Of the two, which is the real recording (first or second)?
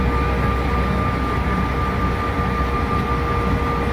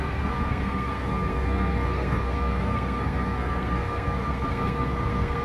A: first